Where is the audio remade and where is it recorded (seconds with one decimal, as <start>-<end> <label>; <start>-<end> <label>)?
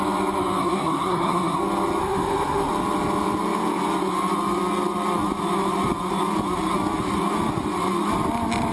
0.0-0.6 recorded; 0.6-1.6 remade; 1.6-2.0 recorded; 2.0-2.7 remade; 2.7-8.7 recorded